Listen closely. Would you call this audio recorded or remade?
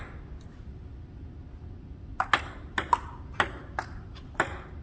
recorded